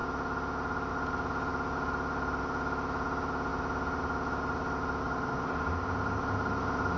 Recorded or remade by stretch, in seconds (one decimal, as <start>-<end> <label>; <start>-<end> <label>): 0.0-7.0 recorded